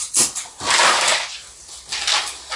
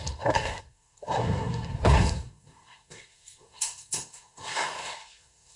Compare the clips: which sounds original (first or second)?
first